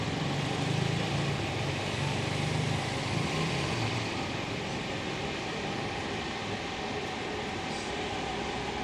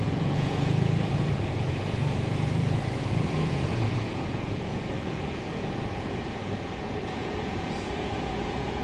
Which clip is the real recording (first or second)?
first